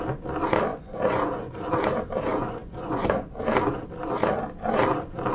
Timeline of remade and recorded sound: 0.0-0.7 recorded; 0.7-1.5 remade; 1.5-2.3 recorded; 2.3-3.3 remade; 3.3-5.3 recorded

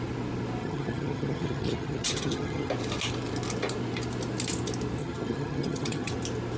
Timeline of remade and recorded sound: 0.0-0.6 recorded; 0.6-2.7 remade; 2.7-5.0 recorded; 5.0-6.1 remade; 6.1-6.6 recorded

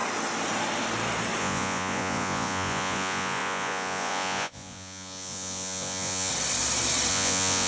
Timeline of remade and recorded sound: 0.0-1.4 recorded; 1.4-6.3 remade; 6.3-7.1 recorded; 7.1-7.7 remade